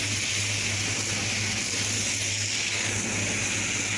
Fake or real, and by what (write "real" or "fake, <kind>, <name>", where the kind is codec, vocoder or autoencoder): real